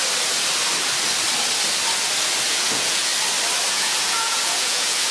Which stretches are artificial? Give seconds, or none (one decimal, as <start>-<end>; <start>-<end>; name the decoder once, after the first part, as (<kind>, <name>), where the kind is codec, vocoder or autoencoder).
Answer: 2.5-3.1 (vocoder, Vocos); 3.7-5.1